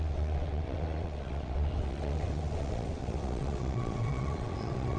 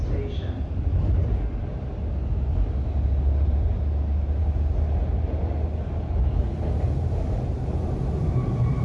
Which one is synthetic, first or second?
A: first